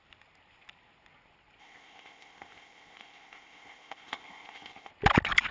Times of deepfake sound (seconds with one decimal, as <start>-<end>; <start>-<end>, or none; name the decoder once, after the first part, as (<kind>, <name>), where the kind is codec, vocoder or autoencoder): 1.6-4.9 (codec, ZipCodec)